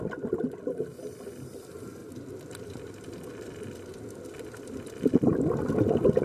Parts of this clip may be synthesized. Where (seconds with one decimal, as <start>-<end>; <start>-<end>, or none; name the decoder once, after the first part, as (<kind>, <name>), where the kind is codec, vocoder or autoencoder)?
none